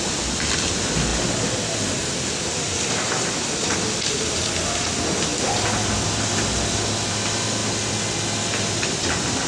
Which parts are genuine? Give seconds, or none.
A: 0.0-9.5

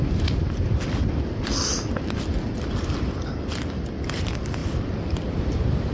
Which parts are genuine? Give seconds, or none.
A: 0.0-5.9

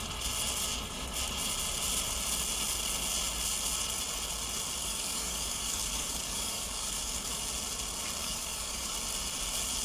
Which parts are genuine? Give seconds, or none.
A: 0.0-4.8; 7.4-8.2; 8.9-9.8

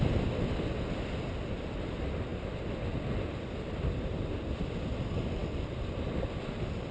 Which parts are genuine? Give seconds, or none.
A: 0.0-6.9

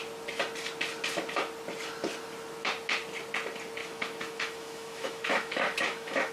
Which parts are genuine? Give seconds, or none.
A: 0.0-3.8

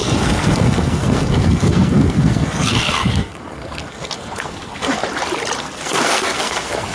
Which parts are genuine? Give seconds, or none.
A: 5.0-5.6